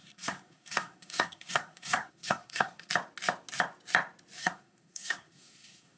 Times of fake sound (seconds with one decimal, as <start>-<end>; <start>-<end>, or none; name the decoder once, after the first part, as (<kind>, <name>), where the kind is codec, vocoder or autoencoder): 0.0-2.9 (codec, SNAC); 4.4-6.0